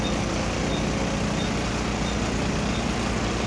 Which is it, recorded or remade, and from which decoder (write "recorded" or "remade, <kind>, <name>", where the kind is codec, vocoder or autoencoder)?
recorded